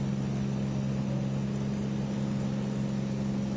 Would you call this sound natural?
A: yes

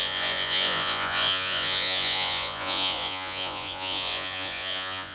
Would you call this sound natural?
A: no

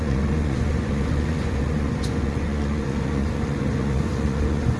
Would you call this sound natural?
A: no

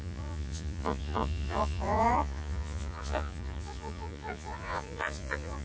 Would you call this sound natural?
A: no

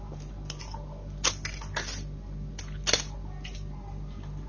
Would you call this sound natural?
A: yes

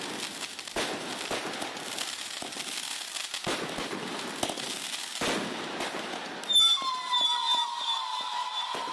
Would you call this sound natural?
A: yes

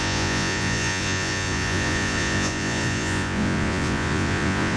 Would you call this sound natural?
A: no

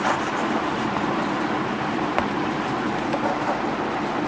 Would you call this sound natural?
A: yes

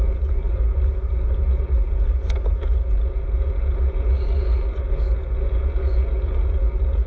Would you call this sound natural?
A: no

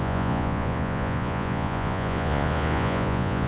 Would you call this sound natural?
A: no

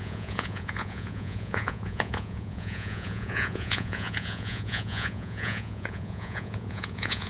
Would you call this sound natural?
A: no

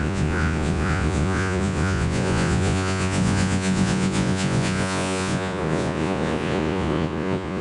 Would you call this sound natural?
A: no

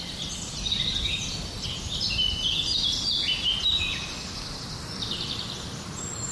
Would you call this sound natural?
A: yes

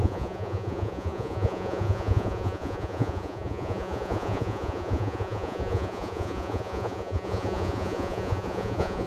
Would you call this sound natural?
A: no